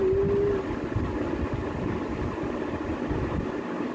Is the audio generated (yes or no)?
no